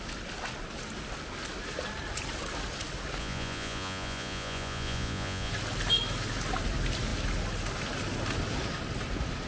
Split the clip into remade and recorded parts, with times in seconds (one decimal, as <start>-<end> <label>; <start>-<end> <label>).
0.0-3.2 recorded; 3.2-5.5 remade; 5.5-9.5 recorded